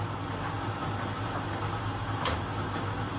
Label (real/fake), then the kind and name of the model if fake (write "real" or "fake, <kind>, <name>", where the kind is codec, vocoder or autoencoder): real